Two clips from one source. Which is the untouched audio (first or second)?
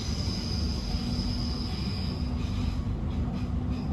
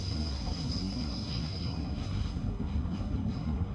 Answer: first